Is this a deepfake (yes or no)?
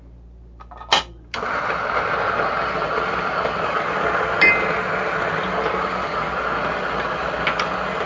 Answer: no